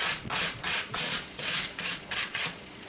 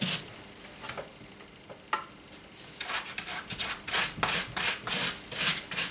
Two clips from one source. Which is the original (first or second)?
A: second